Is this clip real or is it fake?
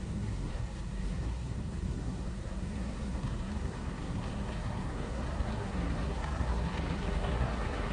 fake